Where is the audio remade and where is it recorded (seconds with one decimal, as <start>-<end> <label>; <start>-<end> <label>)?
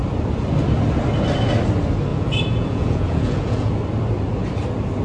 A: 0.0-2.1 recorded; 2.1-3.8 remade; 3.8-5.0 recorded